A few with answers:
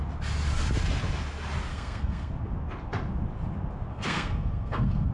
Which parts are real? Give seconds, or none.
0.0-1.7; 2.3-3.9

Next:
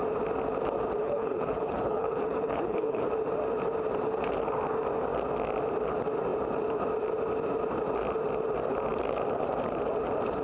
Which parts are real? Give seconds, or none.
0.0-1.0; 3.1-10.4

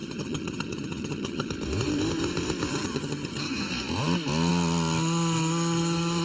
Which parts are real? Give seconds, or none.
1.5-2.7; 3.7-6.2

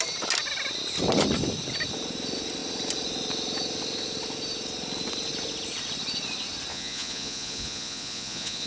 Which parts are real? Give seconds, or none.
0.0-6.7